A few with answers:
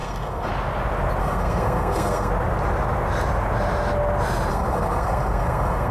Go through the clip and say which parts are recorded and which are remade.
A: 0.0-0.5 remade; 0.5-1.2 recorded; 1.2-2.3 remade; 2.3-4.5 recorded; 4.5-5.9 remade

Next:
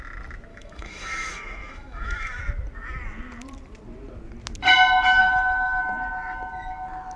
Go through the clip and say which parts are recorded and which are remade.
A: 0.0-0.5 recorded; 0.5-2.4 remade; 2.4-5.2 recorded; 5.2-5.8 remade; 5.8-7.2 recorded